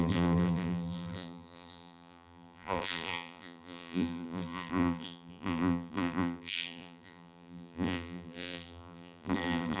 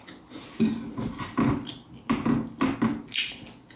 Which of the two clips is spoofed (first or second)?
first